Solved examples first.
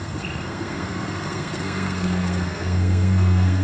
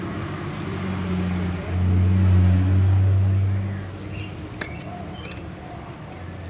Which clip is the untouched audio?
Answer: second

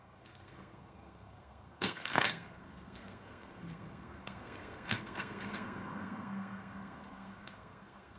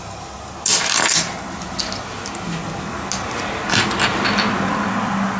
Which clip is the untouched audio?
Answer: second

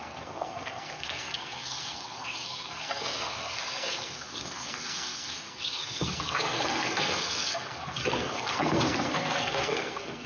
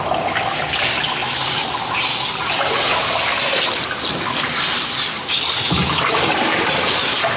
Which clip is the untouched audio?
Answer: second